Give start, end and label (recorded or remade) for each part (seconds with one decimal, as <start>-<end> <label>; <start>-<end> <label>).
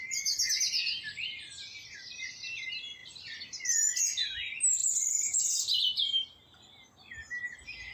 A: 0.0-4.8 recorded; 4.8-7.4 remade; 7.4-7.9 recorded